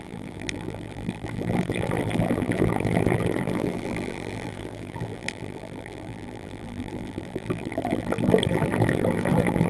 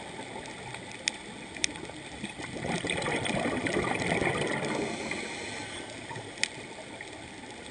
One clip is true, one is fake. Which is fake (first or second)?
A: first